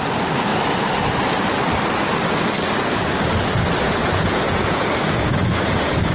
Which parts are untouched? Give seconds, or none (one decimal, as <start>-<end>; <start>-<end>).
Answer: 0.0-4.0